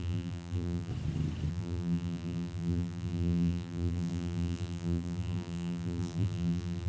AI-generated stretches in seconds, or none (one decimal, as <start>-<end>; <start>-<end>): 0.0-0.9; 1.5-6.9